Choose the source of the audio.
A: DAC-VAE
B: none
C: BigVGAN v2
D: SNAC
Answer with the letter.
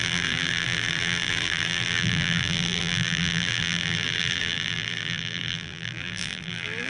C